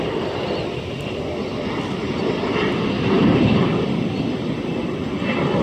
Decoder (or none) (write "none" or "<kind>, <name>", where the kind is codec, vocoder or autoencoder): vocoder, BigVGAN v2